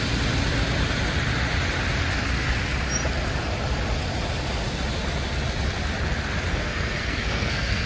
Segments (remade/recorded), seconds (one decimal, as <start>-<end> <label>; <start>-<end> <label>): 0.0-6.5 recorded; 6.5-7.9 remade

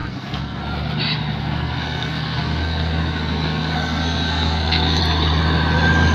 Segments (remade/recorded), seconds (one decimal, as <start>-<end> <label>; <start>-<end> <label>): 0.0-0.6 remade; 0.6-1.4 recorded; 1.4-5.0 remade; 5.0-6.1 recorded